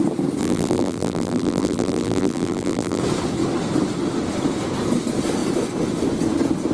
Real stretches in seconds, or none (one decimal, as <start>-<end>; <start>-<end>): 0.0-0.4; 3.0-6.7